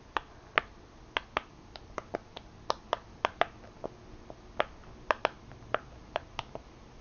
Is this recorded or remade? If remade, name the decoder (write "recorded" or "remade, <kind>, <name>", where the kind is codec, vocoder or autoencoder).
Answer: recorded